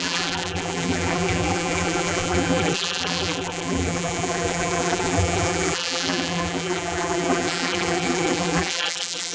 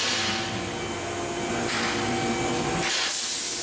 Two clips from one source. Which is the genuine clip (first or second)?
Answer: second